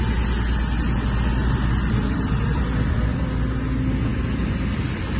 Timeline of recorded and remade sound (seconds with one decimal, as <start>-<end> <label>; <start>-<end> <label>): 0.0-1.4 recorded; 1.4-3.2 remade; 3.2-4.1 recorded; 4.1-5.2 remade